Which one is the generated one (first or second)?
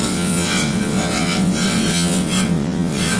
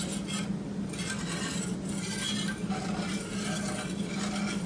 first